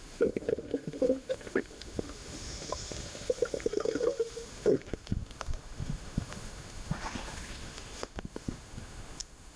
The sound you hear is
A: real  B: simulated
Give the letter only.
B